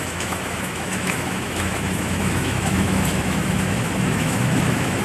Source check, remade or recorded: remade